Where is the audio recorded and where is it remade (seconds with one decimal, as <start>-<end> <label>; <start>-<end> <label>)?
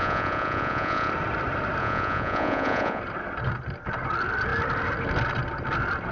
0.0-1.1 remade; 1.1-1.8 recorded; 1.8-3.0 remade; 3.0-6.1 recorded